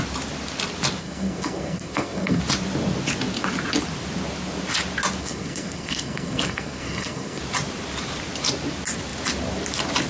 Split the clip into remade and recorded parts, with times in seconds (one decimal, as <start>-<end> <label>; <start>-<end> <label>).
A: 0.0-1.0 recorded; 1.0-2.4 remade; 2.4-5.2 recorded; 5.2-7.4 remade; 7.4-10.1 recorded